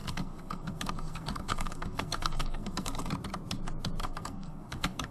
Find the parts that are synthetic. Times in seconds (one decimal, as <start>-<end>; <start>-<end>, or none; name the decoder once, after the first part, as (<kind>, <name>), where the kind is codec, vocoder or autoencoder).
0.0-3.1 (codec, SNAC); 4.0-5.1